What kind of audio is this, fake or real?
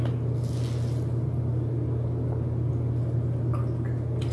real